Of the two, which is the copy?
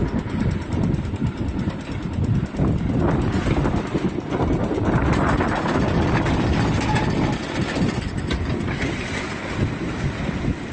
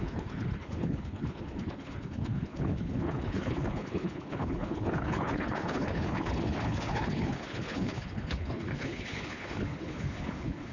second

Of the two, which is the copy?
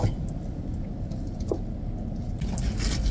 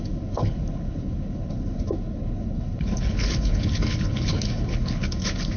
second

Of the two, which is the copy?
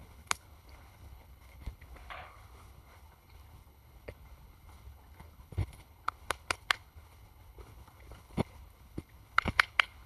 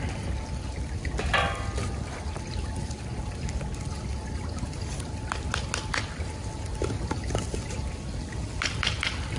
first